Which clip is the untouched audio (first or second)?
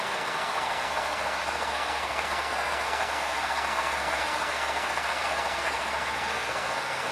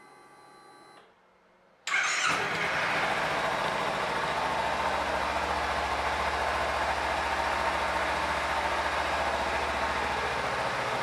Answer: second